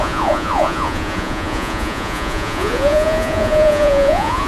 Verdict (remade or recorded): remade